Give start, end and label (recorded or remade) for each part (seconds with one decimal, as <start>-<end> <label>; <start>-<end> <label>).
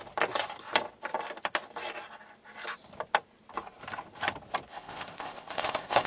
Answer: 0.0-4.7 recorded; 4.7-6.1 remade